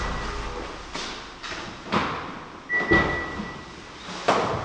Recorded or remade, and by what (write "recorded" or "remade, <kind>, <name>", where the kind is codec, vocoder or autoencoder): recorded